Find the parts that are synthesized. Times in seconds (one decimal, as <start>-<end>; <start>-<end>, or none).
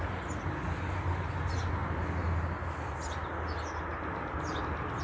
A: none